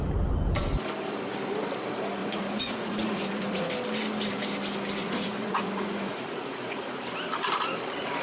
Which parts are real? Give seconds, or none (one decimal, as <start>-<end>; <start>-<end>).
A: 0.0-2.2; 3.7-5.0; 7.0-8.2